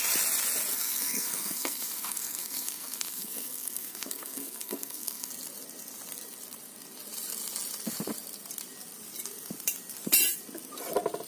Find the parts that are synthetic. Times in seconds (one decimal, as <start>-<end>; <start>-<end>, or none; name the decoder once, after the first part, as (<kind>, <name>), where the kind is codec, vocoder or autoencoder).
0.7-5.3 (codec, SNAC)